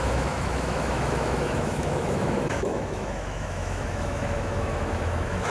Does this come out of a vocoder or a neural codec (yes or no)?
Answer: yes